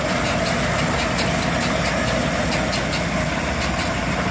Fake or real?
real